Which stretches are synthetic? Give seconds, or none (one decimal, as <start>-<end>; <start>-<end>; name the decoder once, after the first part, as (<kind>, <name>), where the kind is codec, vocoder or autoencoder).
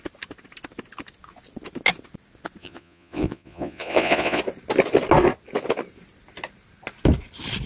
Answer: 2.6-4.4 (vocoder, Vocos)